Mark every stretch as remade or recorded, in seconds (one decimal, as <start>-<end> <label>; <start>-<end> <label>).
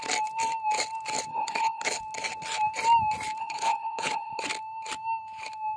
0.0-1.3 recorded; 1.3-2.0 remade; 2.0-3.4 recorded; 3.4-4.4 remade; 4.4-5.8 recorded